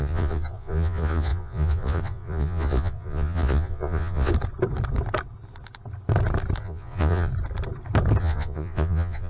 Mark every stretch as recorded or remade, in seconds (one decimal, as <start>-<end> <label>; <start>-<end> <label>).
0.0-4.3 remade; 4.3-6.6 recorded; 6.6-7.3 remade; 7.3-8.2 recorded; 8.2-9.3 remade